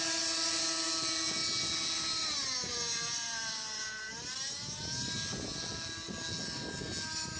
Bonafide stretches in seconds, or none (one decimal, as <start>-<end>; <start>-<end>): 0.0-7.4